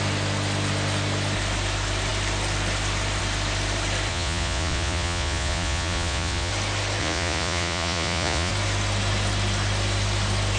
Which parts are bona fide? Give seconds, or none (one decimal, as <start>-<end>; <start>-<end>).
0.0-4.1; 6.5-7.0; 8.5-10.6